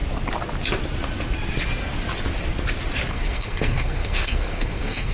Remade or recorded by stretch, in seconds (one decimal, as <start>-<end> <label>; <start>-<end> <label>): 0.0-3.1 recorded; 3.1-5.1 remade